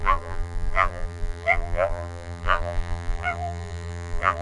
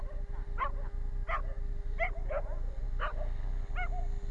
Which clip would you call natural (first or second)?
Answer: second